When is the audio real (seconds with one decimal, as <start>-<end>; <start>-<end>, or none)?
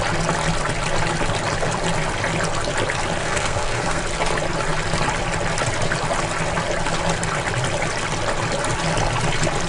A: 0.0-3.2; 4.0-9.7